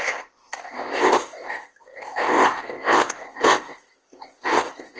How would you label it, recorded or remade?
remade